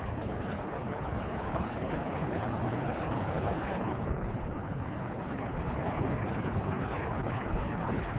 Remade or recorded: remade